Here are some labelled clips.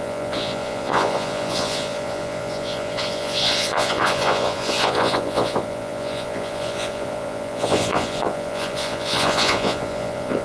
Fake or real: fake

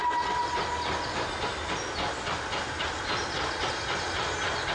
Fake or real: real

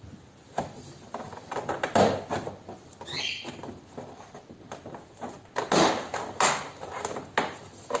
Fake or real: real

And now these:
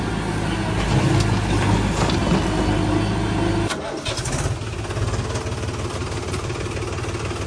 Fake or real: real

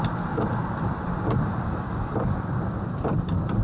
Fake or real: real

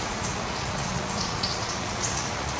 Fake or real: fake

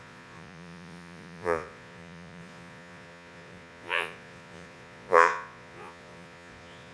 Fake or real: fake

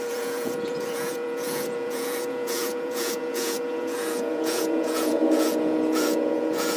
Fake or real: fake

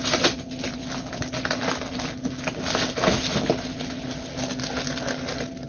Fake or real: real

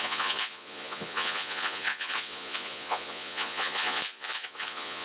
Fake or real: fake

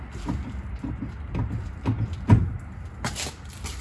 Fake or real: real